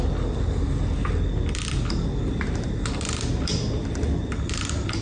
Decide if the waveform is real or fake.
real